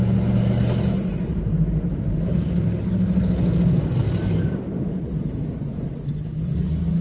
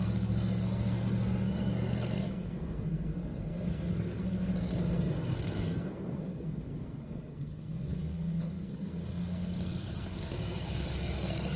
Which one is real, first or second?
first